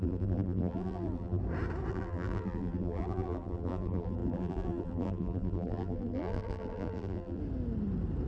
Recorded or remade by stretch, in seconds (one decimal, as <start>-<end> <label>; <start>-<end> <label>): 0.0-1.4 remade; 1.4-1.9 recorded; 1.9-7.4 remade; 7.4-8.3 recorded

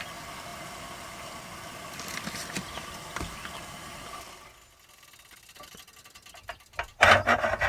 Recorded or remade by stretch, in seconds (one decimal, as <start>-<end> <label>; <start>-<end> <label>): 0.0-0.5 recorded; 0.5-4.4 remade; 4.4-7.7 recorded

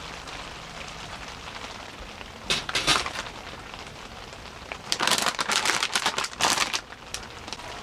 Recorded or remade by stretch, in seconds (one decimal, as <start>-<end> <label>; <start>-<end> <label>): 0.0-2.3 remade; 2.3-2.9 recorded; 2.9-6.4 remade; 6.4-7.8 recorded

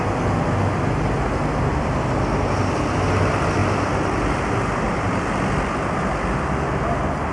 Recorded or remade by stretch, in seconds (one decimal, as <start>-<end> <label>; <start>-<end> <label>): 0.0-1.7 recorded; 1.7-2.7 remade; 2.7-3.6 recorded; 3.6-5.4 remade; 5.4-7.3 recorded

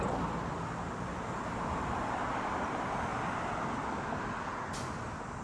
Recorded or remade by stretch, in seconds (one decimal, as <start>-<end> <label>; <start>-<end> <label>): 0.0-5.4 recorded

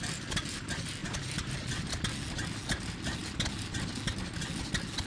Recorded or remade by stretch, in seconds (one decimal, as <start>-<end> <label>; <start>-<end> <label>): 0.0-1.0 recorded; 1.0-1.7 remade; 1.7-5.1 recorded